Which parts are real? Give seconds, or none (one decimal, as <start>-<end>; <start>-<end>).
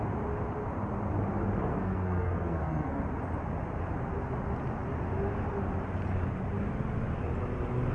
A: 0.0-1.7; 3.0-7.9